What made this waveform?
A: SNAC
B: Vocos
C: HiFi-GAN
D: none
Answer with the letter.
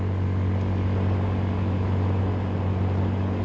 D